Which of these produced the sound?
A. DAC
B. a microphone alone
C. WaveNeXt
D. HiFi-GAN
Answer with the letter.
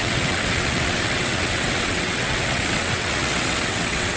C